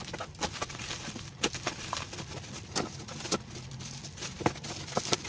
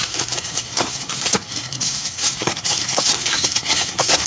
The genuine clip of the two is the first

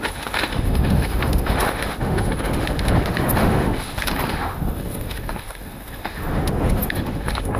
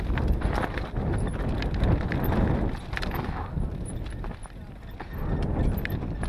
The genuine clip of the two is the second